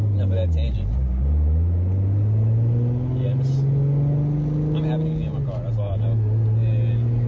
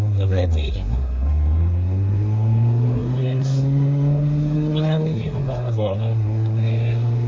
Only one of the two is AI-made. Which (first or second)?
second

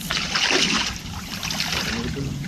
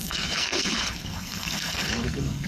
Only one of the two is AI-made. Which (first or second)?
second